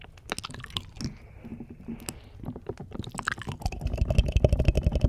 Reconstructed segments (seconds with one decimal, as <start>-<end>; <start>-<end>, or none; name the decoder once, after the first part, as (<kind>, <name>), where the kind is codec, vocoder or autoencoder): none